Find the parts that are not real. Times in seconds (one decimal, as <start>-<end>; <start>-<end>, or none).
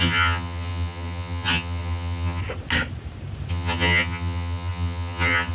0.0-2.4; 3.5-5.5